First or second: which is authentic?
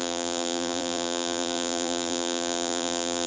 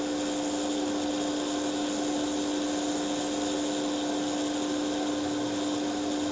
second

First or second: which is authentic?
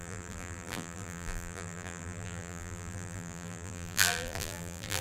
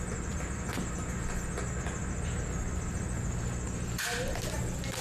second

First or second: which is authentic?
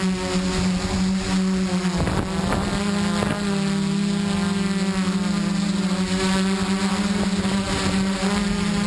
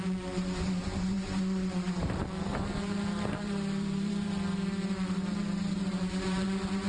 first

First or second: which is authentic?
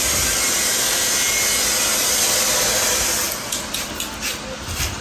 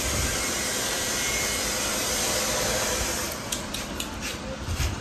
first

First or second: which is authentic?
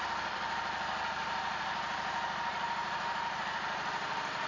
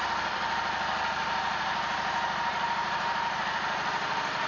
second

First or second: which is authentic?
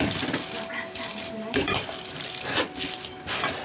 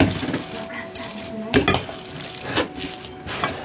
second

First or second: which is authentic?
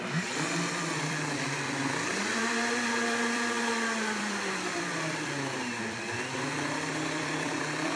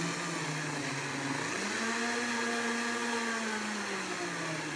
second